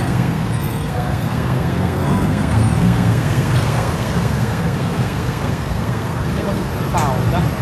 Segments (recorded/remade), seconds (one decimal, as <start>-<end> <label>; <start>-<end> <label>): 0.0-6.7 remade; 6.7-7.6 recorded